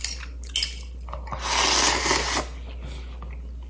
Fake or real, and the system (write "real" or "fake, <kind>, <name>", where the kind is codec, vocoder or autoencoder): real